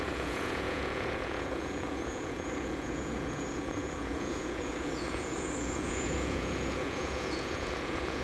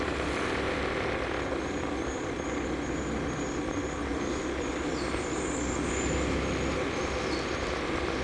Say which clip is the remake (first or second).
first